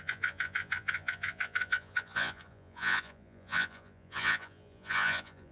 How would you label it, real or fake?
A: fake